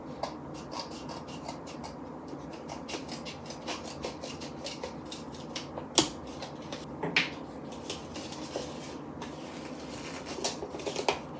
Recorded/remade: recorded